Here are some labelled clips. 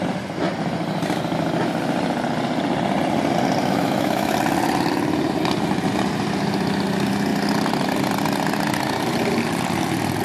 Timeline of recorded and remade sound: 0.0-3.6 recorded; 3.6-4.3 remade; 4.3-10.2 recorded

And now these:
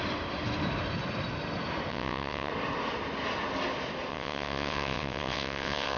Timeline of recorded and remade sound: 0.0-1.9 recorded; 1.9-2.5 remade; 2.5-4.1 recorded; 4.1-6.0 remade